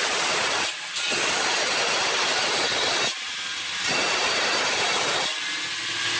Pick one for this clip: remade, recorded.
recorded